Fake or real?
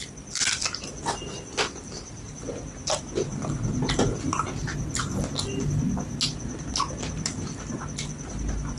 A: real